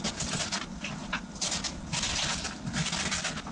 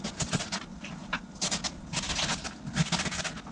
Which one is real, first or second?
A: second